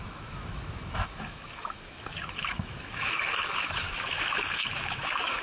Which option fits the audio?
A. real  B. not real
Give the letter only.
B